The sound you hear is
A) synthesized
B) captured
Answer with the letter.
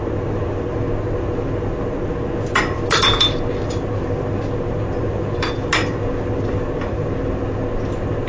B